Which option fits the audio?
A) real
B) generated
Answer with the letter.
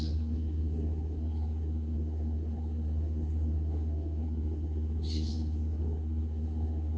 B